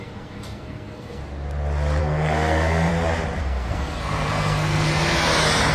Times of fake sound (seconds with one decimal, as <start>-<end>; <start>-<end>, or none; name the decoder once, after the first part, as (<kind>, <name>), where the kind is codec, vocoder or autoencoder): 0.0-1.2 (codec, SNAC); 2.0-2.9; 3.4-4.9